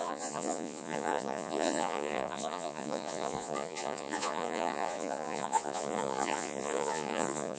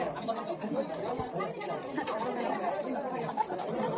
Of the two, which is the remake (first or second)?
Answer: first